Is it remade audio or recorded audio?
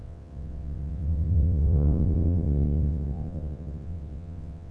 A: remade